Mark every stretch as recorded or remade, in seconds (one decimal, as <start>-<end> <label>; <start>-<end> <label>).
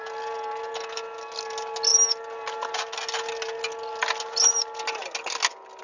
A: 0.0-5.8 recorded